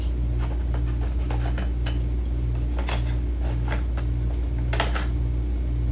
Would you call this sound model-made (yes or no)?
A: no